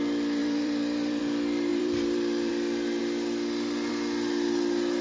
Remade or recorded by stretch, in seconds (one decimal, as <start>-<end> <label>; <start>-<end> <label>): 0.0-0.4 recorded; 0.4-1.2 remade; 1.2-1.7 recorded; 1.7-2.5 remade; 2.5-5.0 recorded